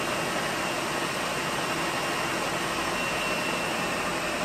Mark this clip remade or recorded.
recorded